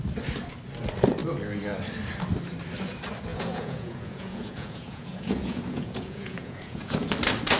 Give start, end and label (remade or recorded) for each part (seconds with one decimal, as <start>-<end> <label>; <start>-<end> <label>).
0.0-3.3 recorded; 3.3-7.1 remade; 7.1-7.6 recorded